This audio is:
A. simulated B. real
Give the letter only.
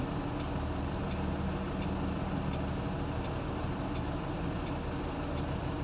B